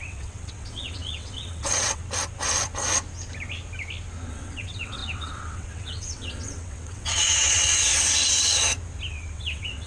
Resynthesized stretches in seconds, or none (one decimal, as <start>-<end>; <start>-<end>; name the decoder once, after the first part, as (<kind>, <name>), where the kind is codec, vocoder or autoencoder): 0.0-2.0 (vocoder, WaveNeXt); 4.3-7.9; 9.1-9.9